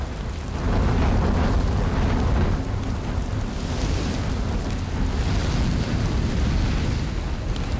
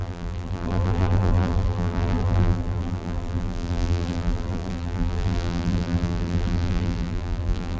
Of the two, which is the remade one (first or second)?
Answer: second